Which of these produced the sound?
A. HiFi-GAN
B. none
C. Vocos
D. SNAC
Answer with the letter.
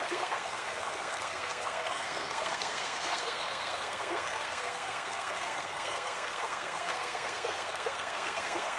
D